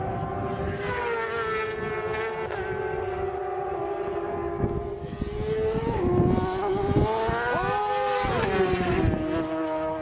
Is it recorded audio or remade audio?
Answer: recorded